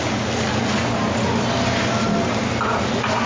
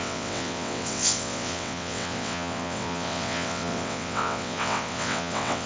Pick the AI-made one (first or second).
second